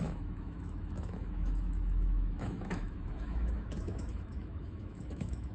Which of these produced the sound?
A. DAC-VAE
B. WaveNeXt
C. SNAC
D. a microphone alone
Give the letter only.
A